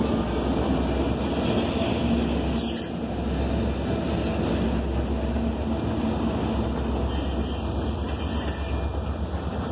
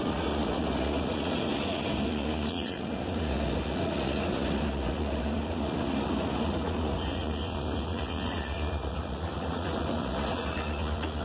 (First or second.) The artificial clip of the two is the second